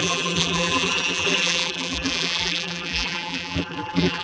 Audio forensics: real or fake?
fake